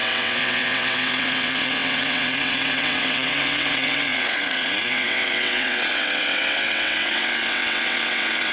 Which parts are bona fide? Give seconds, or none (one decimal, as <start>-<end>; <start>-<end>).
none